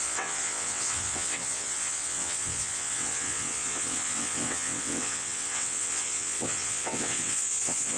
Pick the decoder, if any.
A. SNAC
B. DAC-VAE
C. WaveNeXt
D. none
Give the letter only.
C